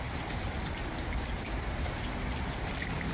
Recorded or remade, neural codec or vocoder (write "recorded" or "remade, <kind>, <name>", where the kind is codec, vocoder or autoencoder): recorded